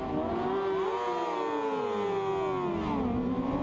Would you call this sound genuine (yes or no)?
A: yes